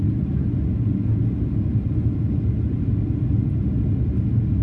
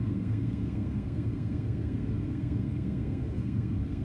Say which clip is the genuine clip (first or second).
first